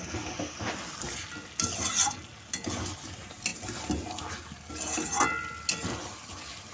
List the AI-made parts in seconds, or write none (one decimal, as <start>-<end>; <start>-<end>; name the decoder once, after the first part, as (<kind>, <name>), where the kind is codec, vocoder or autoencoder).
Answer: none

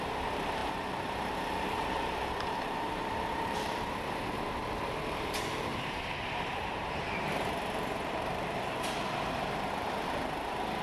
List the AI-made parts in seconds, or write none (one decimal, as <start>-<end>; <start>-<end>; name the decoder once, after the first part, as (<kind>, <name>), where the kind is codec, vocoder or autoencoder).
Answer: 0.0-10.8 (vocoder, BigVGAN v2)

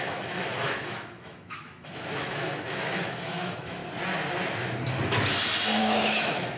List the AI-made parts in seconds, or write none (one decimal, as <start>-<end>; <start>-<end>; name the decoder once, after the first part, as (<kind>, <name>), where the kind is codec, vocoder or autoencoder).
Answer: 0.0-3.8 (autoencoder, DAC-VAE); 5.8-6.6

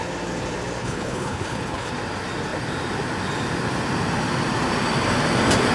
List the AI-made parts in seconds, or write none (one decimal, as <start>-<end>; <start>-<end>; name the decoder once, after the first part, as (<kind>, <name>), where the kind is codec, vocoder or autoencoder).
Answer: 0.8-1.9 (codec, HILCodec)